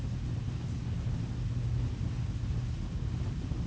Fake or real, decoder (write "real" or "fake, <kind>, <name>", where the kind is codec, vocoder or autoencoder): real